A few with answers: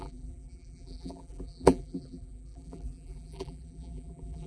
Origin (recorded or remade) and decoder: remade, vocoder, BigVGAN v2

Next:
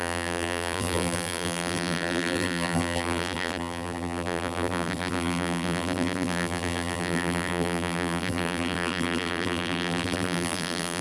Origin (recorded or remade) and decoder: remade, vocoder, BigVGAN v2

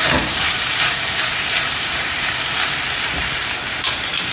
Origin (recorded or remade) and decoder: remade, vocoder, BigVGAN v2